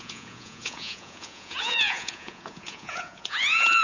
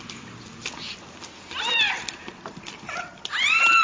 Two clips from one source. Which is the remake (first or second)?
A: first